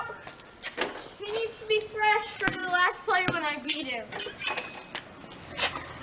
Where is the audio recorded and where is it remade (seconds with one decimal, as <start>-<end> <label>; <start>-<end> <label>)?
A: 0.0-6.0 recorded